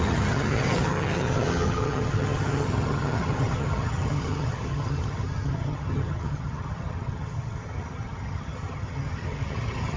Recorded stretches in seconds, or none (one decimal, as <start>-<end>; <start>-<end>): none